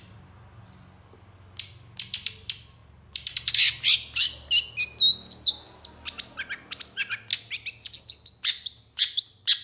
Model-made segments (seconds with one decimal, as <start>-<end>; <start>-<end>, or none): none